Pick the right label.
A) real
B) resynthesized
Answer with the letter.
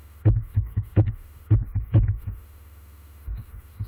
B